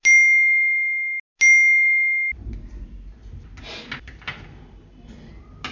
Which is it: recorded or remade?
recorded